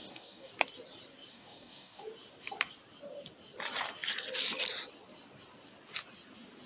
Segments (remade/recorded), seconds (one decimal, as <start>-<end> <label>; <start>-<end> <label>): 0.0-0.5 remade; 0.5-1.3 recorded; 1.3-2.0 remade; 2.0-6.7 recorded